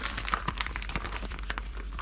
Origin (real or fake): fake